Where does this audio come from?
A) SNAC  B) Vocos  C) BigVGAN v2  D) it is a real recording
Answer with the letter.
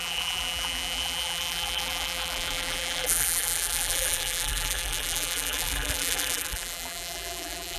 C